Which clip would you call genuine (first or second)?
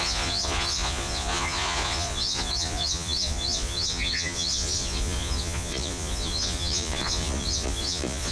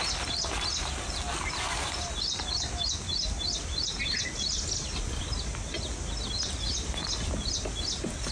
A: second